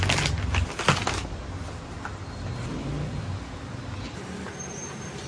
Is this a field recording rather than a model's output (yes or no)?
yes